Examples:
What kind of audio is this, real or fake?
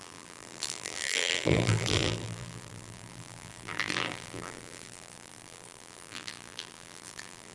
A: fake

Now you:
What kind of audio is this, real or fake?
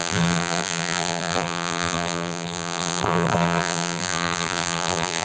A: fake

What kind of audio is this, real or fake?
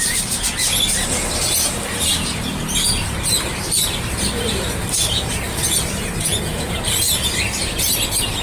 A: fake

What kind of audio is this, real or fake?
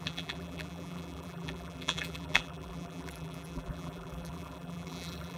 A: fake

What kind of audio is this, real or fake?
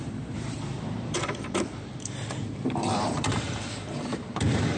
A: fake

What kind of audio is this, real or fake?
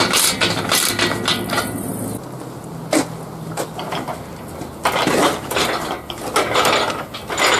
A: real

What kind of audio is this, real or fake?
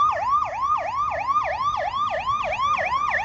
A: real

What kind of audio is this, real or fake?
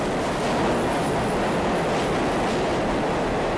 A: real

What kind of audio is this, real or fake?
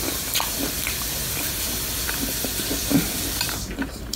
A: fake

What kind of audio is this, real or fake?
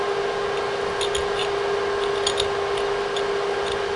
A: real